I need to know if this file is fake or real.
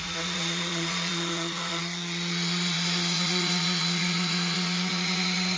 fake